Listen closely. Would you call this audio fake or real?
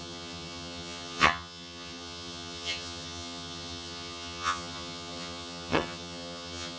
fake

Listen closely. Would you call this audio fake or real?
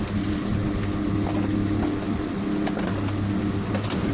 real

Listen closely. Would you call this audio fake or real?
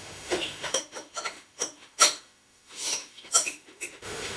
fake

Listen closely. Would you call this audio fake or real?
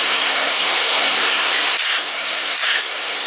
fake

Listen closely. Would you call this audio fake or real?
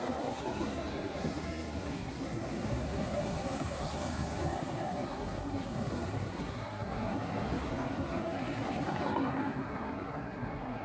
fake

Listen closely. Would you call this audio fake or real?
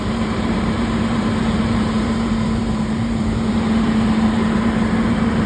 fake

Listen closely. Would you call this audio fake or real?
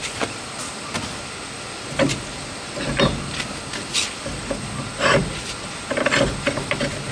real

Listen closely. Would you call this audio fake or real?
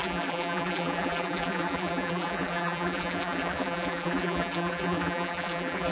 fake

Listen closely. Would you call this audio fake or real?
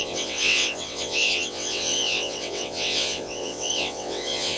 fake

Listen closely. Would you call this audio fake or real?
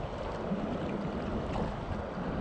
real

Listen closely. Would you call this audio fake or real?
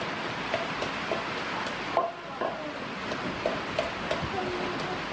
real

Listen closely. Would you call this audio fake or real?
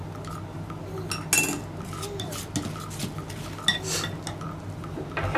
real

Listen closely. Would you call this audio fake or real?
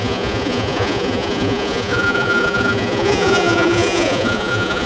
fake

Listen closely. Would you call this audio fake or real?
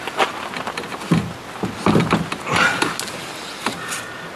real